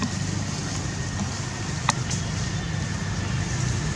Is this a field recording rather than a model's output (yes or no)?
yes